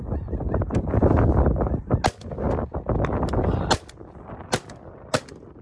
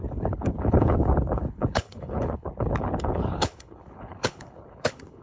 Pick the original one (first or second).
first